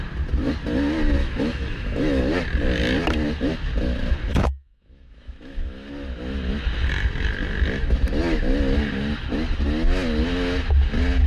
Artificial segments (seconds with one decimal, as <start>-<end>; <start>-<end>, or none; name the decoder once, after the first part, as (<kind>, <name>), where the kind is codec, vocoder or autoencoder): 1.2-2.2 (autoencoder, DAC-VAE); 4.3-5.9